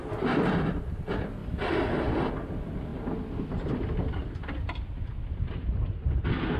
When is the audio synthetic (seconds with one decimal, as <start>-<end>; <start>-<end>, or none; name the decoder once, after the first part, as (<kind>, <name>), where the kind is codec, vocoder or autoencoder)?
none